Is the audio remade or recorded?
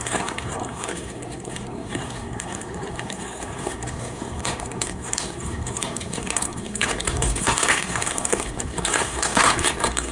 remade